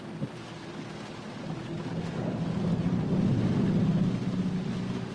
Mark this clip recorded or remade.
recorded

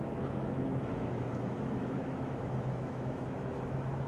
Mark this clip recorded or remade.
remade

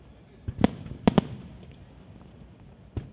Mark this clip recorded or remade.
recorded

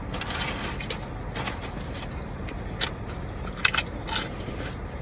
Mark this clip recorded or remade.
recorded